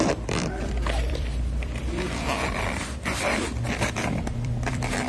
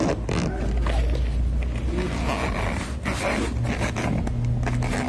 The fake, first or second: first